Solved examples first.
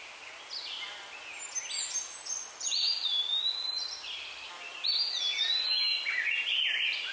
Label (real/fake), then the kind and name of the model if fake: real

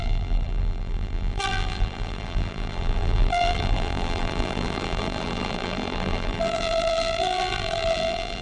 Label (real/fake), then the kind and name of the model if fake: fake, vocoder, BigVGAN v2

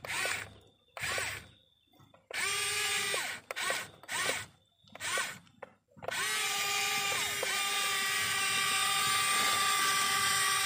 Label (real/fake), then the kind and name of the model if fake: real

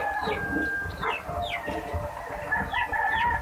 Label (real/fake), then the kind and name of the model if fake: real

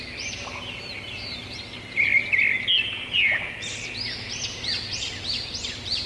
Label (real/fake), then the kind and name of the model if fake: real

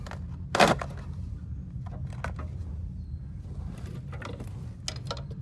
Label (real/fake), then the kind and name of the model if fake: real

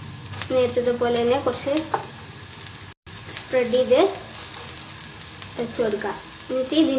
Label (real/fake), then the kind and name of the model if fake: real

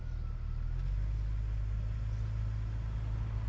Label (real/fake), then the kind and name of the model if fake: real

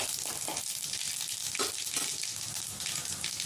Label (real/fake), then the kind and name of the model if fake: real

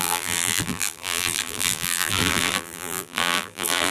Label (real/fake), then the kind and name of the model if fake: fake, vocoder, BigVGAN v2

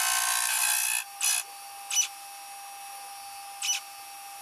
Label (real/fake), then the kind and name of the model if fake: real